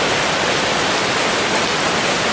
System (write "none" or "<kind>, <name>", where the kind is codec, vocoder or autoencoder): none